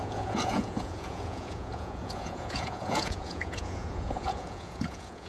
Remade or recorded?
remade